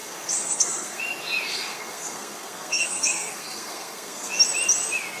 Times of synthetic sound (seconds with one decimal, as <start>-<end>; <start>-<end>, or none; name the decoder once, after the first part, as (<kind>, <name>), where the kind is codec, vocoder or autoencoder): 0.0-1.0 (codec, SNAC); 1.5-4.3